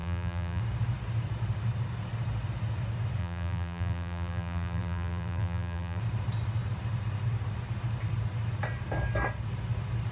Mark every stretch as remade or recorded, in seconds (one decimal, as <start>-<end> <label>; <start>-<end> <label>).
0.0-0.6 remade; 0.6-3.2 recorded; 3.2-6.0 remade; 6.0-10.1 recorded